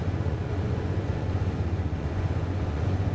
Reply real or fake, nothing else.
fake